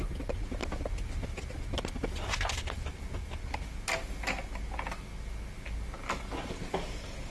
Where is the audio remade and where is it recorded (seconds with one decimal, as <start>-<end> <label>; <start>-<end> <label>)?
0.0-7.3 recorded